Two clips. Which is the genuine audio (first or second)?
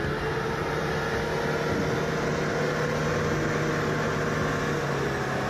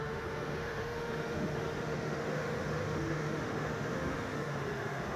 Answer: first